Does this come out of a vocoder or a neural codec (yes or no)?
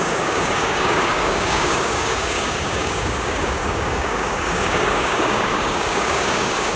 yes